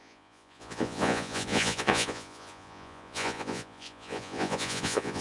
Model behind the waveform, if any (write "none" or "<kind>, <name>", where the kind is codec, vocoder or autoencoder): vocoder, Vocos